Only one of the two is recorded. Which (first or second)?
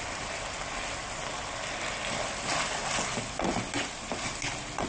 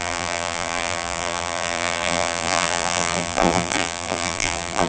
first